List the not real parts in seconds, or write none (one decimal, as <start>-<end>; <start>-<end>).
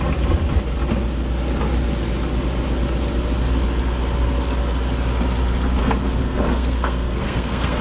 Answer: 5.8-7.8